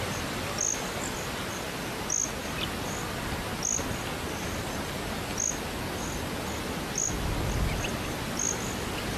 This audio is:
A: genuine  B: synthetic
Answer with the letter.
A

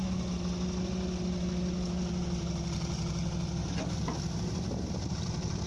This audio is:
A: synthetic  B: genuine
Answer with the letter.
B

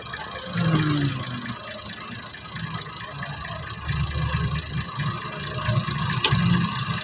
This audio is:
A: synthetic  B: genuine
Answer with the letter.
B